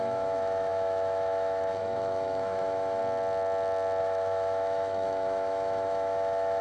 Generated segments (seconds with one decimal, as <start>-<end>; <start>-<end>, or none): 0.0-3.0; 4.0-6.6